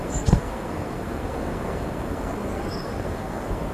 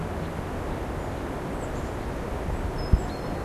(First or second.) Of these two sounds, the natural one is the second